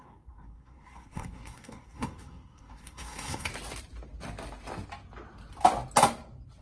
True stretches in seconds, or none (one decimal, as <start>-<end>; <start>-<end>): 3.5-6.6